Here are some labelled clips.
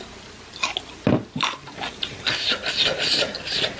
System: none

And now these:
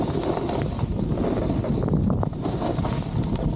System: none